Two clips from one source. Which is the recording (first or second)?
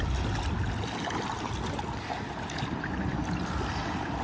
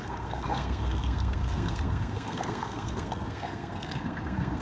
first